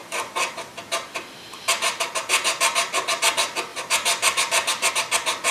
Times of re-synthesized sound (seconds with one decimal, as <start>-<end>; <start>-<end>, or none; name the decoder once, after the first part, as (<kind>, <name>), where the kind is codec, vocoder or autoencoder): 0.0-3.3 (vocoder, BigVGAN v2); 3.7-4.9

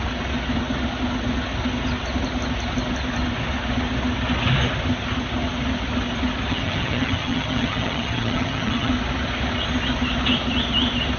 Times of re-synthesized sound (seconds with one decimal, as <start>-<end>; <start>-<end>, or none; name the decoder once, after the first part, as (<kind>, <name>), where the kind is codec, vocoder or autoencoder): 6.5-8.9 (vocoder, HiFi-GAN)

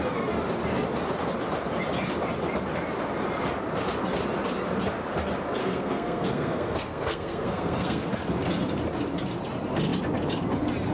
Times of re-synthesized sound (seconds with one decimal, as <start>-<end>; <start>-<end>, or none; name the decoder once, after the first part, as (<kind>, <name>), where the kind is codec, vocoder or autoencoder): 5.6-8.1 (codec, SNAC)

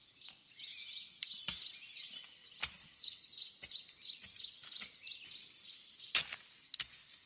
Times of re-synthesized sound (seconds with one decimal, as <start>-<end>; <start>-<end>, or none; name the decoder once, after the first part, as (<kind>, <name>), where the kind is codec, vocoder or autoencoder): none